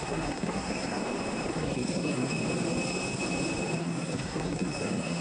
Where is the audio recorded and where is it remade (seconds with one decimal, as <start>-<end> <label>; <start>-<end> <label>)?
0.0-1.0 remade; 1.0-1.5 recorded; 1.5-2.3 remade; 2.3-3.8 recorded; 3.8-5.2 remade